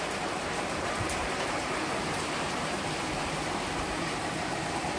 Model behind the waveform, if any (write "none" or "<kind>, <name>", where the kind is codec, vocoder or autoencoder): vocoder, BigVGAN v2